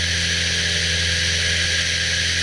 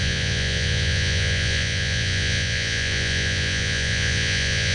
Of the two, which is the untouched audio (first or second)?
first